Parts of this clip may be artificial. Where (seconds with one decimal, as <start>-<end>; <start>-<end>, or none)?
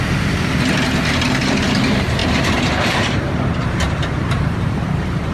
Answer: 0.0-5.3